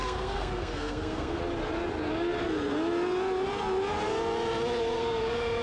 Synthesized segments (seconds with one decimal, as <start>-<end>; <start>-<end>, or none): 0.0-1.4; 4.8-5.6